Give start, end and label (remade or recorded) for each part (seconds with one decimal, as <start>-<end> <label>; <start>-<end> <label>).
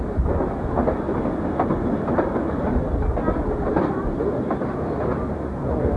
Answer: 0.0-6.0 recorded